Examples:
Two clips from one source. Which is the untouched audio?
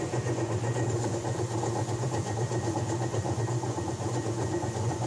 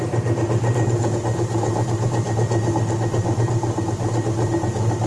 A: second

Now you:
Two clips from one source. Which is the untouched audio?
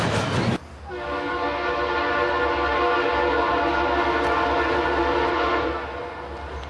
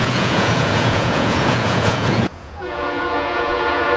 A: first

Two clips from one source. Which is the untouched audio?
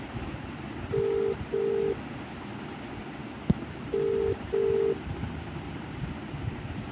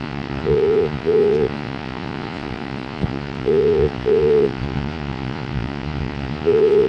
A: first